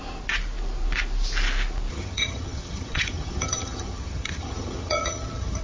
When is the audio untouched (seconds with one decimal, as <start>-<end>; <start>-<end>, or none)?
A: 0.0-1.9